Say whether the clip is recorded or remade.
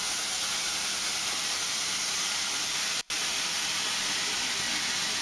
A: recorded